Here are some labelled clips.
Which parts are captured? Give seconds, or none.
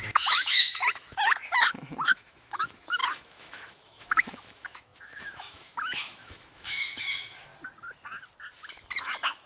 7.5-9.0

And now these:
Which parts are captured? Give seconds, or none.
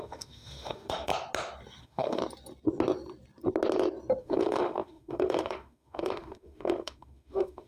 1.1-1.8; 2.2-4.2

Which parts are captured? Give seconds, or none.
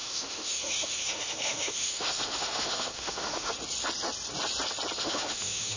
3.5-5.0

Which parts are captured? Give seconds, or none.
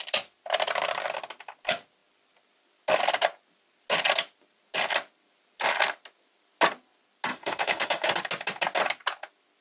0.0-7.3; 8.1-9.6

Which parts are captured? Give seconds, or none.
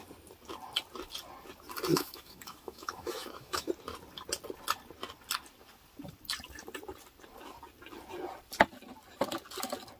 0.0-1.9; 3.7-10.0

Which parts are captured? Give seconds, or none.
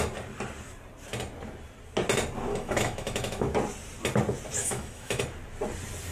0.0-2.5; 3.5-4.6; 5.2-6.1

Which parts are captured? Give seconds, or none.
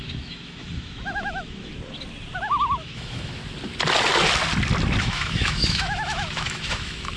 1.7-2.8; 3.4-5.0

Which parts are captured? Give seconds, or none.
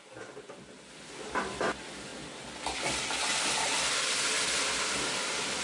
0.0-5.6